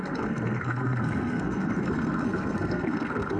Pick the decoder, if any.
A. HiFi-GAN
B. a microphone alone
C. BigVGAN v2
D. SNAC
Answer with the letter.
D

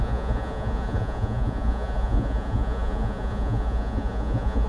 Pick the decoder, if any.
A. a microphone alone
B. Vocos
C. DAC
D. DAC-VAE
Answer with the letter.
B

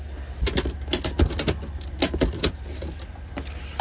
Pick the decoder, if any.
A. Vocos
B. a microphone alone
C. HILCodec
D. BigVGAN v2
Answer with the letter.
B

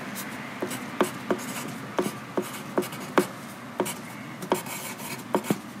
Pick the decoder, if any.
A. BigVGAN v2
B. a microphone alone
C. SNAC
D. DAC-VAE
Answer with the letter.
B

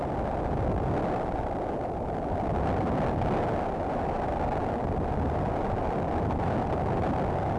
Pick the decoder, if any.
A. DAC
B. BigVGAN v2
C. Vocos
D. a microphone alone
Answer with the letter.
D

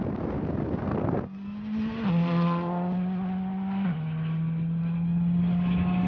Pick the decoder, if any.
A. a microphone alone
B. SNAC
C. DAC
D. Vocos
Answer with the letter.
A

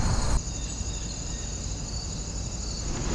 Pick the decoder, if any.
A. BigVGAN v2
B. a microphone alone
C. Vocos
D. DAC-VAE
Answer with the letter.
A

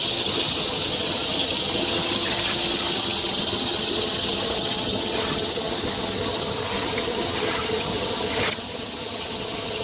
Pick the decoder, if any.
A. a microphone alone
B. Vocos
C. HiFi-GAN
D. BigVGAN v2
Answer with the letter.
C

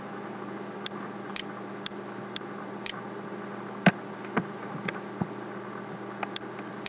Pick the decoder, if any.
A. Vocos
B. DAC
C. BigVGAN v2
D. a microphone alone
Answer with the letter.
D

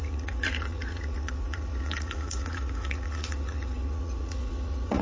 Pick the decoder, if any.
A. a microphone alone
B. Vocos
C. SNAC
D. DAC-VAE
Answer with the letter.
B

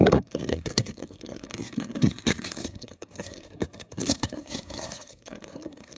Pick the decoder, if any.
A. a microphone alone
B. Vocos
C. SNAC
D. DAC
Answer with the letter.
C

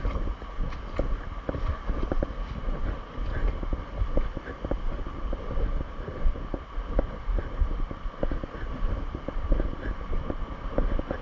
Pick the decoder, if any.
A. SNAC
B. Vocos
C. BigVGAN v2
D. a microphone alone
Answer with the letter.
D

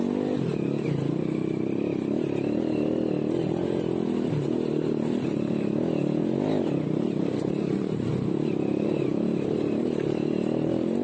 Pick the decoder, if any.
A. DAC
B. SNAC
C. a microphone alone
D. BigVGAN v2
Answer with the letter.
C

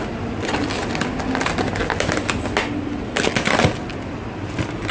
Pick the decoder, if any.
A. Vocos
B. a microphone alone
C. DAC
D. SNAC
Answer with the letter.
B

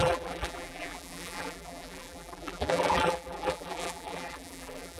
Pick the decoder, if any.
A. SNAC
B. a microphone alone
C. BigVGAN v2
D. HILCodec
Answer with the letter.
C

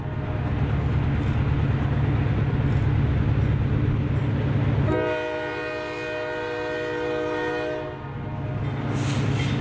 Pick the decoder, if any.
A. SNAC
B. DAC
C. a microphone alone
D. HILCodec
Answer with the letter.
C